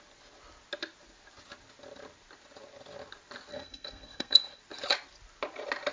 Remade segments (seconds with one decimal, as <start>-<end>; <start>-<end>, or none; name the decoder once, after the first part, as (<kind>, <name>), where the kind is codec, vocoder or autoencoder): 3.5-4.6 (codec, SNAC)